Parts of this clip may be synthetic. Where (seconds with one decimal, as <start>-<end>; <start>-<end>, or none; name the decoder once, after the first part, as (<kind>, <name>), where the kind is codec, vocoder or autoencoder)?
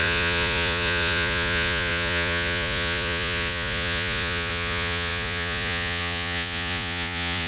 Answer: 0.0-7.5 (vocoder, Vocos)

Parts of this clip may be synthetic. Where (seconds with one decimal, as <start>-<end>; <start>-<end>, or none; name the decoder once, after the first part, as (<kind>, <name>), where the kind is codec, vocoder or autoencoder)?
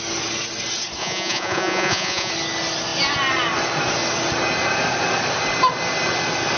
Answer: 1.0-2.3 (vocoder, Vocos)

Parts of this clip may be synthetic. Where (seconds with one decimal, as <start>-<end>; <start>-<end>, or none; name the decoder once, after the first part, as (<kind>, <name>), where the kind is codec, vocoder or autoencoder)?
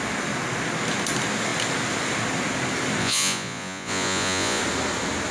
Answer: 3.0-4.6 (vocoder, Vocos)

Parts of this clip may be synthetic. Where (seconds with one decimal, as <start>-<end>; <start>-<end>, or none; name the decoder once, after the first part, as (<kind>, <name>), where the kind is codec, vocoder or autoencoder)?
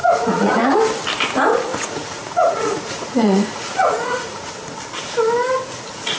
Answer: 0.0-0.8 (vocoder, Vocos); 1.7-4.5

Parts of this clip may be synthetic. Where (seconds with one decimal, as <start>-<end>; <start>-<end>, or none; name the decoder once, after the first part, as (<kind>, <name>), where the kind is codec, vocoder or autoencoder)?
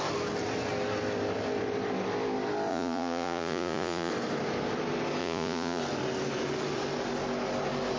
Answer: 2.7-4.1 (vocoder, Vocos); 5.2-5.8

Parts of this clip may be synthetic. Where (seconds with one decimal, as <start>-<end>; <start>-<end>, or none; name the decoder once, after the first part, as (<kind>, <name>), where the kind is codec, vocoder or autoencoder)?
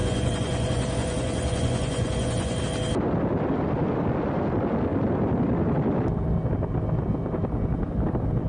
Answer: 0.0-2.6 (vocoder, Vocos)